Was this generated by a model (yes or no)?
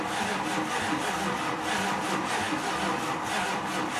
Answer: no